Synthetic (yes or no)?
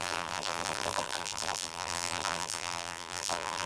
yes